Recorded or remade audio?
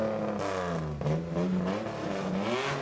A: recorded